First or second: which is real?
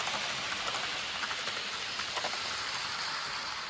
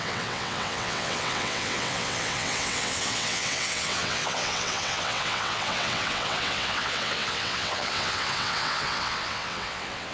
first